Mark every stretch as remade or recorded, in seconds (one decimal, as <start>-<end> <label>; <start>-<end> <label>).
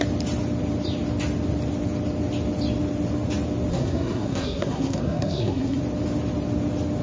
0.0-3.7 recorded; 3.7-5.8 remade; 5.8-7.0 recorded